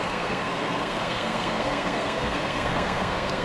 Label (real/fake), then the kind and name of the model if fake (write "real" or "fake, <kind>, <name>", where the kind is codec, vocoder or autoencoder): fake, codec, SNAC